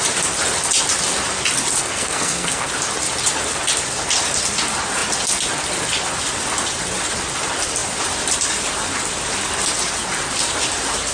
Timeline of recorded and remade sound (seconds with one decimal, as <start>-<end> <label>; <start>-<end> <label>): 0.0-1.8 recorded; 1.8-2.7 remade; 2.7-11.1 recorded